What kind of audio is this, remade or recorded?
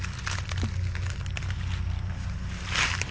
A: recorded